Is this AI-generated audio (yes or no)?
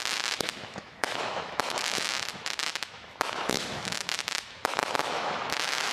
yes